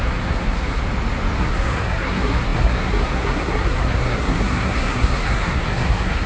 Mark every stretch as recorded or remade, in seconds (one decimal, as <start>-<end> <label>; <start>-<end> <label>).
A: 0.0-0.8 remade; 0.8-1.4 recorded; 1.4-6.3 remade